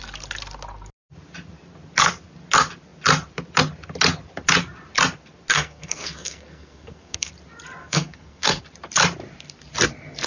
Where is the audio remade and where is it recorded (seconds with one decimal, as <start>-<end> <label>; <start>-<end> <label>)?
0.0-5.5 recorded; 5.5-7.3 remade; 7.3-7.8 recorded; 7.8-8.6 remade; 8.6-10.3 recorded